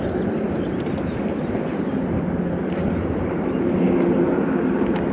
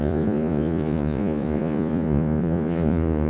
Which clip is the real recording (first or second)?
first